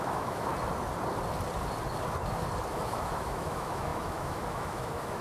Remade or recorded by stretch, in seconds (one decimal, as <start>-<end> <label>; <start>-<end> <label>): 0.0-0.5 remade; 0.5-2.7 recorded; 2.7-5.2 remade